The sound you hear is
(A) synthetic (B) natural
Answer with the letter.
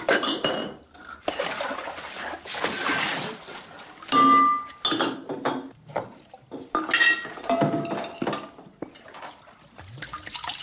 B